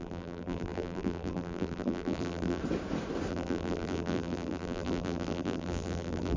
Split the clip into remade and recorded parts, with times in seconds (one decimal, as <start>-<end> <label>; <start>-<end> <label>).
0.0-2.6 remade; 2.6-3.3 recorded; 3.3-6.4 remade